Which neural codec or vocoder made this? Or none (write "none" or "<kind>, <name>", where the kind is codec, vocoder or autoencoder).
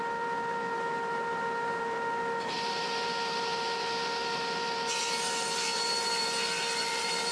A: vocoder, BigVGAN v2